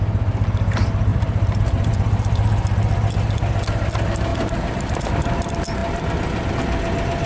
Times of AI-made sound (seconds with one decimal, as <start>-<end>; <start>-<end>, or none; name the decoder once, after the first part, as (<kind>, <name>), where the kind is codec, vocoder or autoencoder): 1.1-1.6 (vocoder, BigVGAN v2); 4.3-5.1

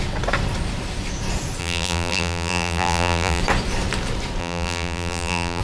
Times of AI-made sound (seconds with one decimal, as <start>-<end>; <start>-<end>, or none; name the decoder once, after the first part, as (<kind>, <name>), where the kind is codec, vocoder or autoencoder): 1.6-3.4 (vocoder, BigVGAN v2); 4.4-5.6

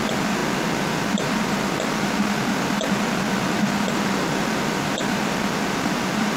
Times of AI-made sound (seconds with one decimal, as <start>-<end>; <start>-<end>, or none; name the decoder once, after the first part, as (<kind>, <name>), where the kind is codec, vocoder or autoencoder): 0.0-6.4 (vocoder, BigVGAN v2)

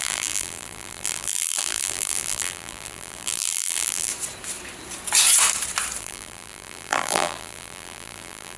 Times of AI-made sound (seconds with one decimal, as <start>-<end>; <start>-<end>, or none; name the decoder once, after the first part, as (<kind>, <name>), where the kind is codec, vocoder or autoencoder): 0.0-4.1 (vocoder, BigVGAN v2); 6.0-8.6

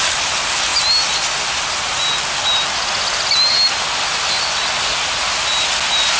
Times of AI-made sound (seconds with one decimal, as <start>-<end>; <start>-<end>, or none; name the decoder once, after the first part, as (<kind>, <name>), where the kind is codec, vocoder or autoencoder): none

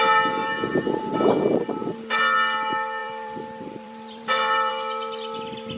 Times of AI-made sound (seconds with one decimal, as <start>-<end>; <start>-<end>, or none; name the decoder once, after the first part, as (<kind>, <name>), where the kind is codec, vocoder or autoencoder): 0.4-1.0 (vocoder, BigVGAN v2); 3.0-4.7

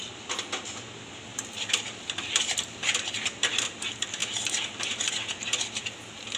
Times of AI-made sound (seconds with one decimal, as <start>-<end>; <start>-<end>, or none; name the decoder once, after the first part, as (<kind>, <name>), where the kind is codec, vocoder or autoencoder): 1.3-2.8 (vocoder, BigVGAN v2)